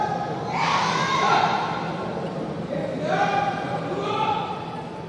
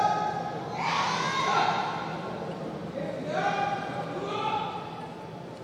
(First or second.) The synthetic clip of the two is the first